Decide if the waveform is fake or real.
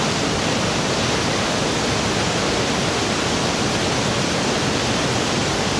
real